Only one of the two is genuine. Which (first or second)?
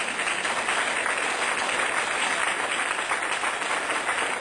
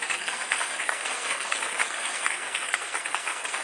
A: first